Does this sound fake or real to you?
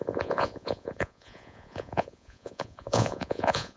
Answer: fake